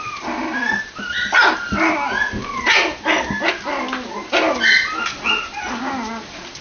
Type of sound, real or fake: real